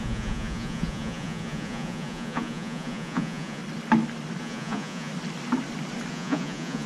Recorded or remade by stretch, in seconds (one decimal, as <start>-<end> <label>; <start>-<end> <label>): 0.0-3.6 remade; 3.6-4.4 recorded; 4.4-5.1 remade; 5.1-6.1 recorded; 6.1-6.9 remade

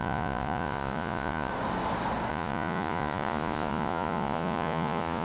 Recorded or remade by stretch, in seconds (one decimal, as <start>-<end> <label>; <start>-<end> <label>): 0.0-1.5 remade; 1.5-2.3 recorded; 2.3-5.2 remade

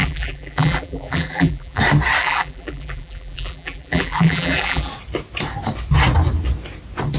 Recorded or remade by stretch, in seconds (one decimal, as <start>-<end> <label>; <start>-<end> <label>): 0.0-1.8 remade; 1.8-2.2 recorded; 2.2-4.9 remade; 4.9-7.2 recorded